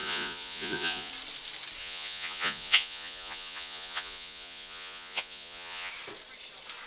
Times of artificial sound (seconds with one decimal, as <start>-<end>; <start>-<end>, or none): 0.0-1.1; 1.8-5.9